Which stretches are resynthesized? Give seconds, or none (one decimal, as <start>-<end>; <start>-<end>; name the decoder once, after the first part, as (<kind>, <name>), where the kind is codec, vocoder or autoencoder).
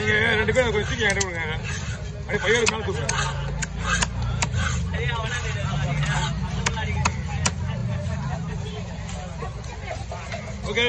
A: none